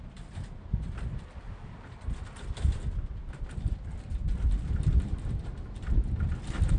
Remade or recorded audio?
recorded